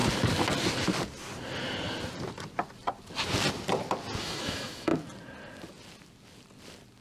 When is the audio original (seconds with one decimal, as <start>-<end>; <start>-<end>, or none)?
0.0-4.2; 4.9-7.0